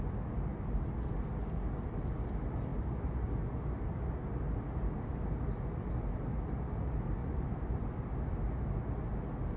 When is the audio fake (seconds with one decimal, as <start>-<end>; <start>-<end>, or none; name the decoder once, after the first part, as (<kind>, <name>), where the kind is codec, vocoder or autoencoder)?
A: 0.5-1.1 (vocoder, BigVGAN v2); 7.2-7.8